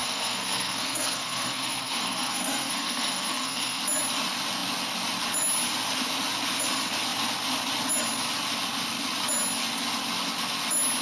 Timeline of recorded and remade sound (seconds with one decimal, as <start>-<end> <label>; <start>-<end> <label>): 0.0-3.8 remade; 3.8-11.0 recorded